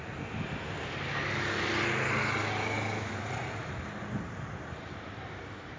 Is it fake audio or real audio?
real